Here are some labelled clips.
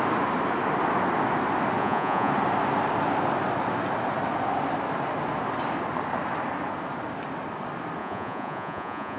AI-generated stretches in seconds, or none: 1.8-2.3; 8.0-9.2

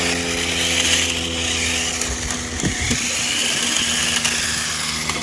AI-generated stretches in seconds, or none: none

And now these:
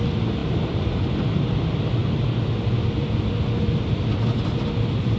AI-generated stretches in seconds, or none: none